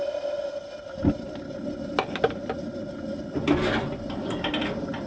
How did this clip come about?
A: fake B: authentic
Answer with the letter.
B